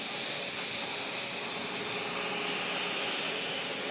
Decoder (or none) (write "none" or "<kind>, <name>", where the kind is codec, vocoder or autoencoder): none